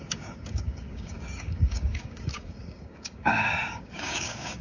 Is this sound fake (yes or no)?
yes